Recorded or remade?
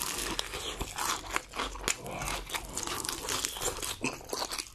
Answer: recorded